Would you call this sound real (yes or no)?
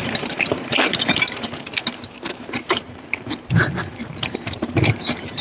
no